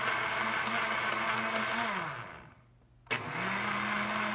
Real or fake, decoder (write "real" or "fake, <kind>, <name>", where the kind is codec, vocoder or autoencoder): real